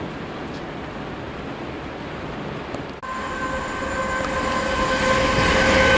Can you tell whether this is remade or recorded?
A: recorded